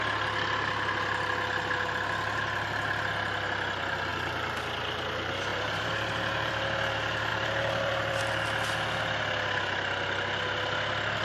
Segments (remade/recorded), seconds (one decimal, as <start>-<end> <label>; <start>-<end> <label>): 0.0-5.5 recorded; 5.5-6.5 remade; 6.5-7.3 recorded; 7.3-8.2 remade; 8.2-11.2 recorded